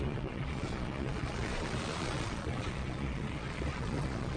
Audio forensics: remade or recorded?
remade